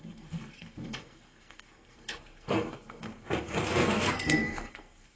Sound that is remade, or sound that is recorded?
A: remade